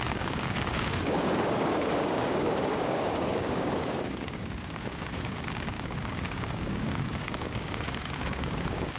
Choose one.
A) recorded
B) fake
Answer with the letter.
B